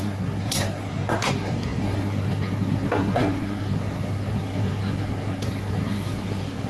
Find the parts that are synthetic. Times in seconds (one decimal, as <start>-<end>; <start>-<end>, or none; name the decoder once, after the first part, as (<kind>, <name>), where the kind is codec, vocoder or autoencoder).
0.0-6.7 (codec, SNAC)